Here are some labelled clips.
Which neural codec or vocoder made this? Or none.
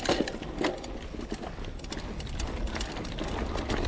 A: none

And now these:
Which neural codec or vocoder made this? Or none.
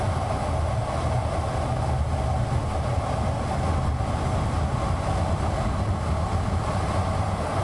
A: none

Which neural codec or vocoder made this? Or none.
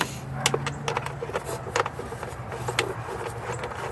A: none